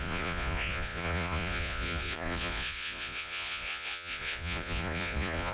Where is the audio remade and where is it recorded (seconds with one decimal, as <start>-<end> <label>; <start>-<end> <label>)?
0.0-5.5 remade